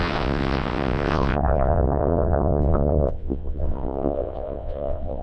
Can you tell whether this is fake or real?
fake